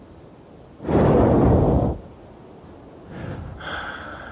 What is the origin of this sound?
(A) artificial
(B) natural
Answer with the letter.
B